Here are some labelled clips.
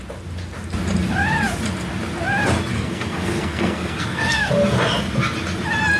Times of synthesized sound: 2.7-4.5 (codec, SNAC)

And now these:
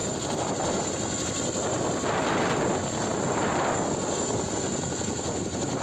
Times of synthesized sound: none

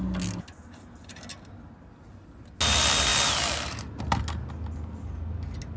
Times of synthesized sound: none

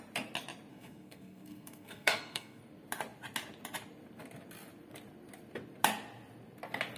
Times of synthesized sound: 0.7-2.6 (codec, SNAC)

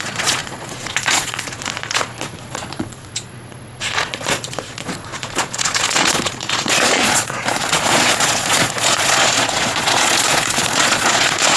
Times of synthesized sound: 0.0-11.6 (vocoder, Vocos)

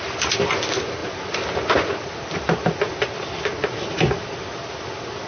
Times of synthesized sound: none